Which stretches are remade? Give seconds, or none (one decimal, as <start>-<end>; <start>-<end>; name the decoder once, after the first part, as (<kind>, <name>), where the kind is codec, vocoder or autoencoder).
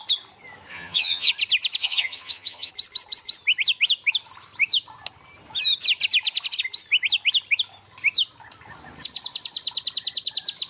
0.7-1.3 (vocoder, HiFi-GAN); 1.8-2.7